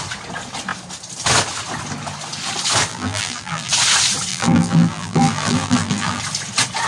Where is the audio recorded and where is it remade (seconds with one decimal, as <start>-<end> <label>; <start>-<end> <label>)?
0.0-2.9 recorded; 2.9-3.7 remade; 3.7-4.3 recorded; 4.3-6.2 remade; 6.2-6.9 recorded